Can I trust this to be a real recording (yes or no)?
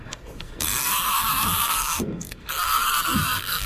no